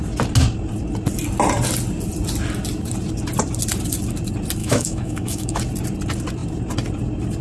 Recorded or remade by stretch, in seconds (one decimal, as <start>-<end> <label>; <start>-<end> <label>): 0.0-4.6 recorded; 4.6-5.6 remade; 5.6-7.4 recorded